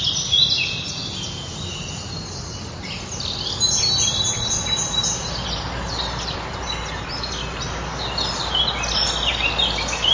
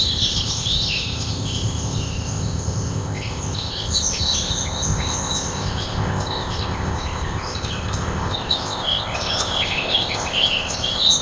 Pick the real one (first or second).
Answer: first